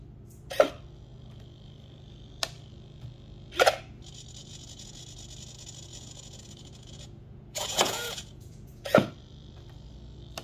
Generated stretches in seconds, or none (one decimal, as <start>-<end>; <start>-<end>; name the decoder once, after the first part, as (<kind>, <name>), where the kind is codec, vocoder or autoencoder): 4.4-5.0 (vocoder, Vocos); 5.9-9.1